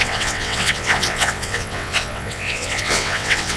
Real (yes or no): no